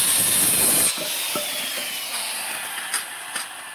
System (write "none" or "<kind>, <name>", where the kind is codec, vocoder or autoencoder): none